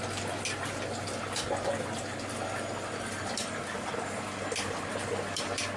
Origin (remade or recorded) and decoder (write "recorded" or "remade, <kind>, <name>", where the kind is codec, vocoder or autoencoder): recorded